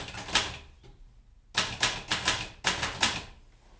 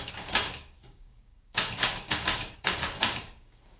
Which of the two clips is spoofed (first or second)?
second